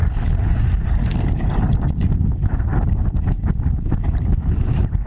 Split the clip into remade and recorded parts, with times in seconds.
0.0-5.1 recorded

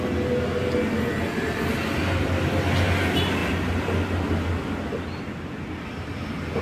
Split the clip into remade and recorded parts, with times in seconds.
0.0-6.6 recorded

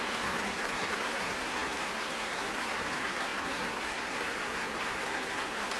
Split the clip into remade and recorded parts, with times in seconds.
0.0-5.8 remade

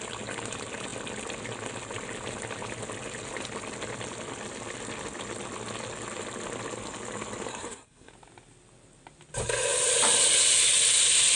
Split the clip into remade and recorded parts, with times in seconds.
0.0-7.5 recorded; 7.5-8.1 remade; 8.1-11.4 recorded

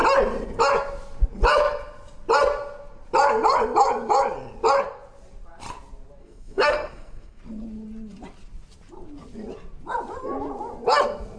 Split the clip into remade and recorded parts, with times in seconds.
0.0-6.2 recorded; 6.2-7.4 remade; 7.4-11.4 recorded

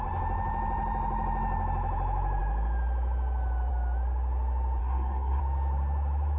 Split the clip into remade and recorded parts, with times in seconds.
0.0-4.8 recorded; 4.8-5.4 remade; 5.4-6.4 recorded

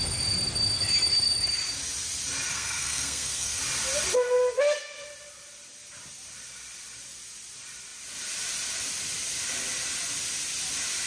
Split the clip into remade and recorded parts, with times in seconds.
0.0-2.5 recorded; 2.5-3.6 remade; 3.6-11.1 recorded

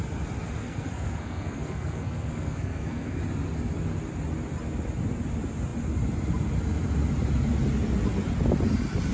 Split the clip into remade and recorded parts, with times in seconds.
0.0-0.6 recorded; 0.6-3.2 remade; 3.2-9.1 recorded